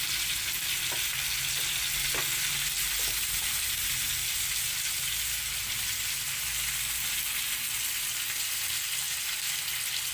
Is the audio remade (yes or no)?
no